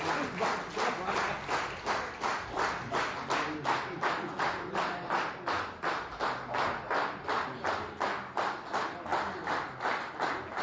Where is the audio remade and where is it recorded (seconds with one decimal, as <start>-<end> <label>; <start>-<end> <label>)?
0.0-10.6 recorded